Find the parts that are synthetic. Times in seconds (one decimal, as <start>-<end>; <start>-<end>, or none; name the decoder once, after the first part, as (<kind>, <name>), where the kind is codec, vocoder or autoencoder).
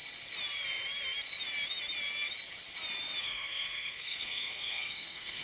3.2-5.4 (codec, SNAC)